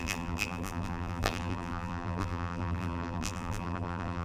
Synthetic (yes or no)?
yes